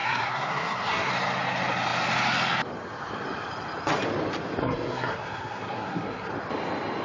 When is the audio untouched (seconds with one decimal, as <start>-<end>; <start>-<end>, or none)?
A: 1.1-4.6; 6.3-7.0